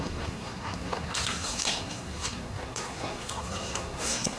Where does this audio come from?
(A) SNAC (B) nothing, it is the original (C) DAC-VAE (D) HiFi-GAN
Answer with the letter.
A